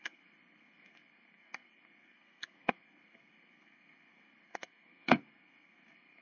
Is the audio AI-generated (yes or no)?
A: yes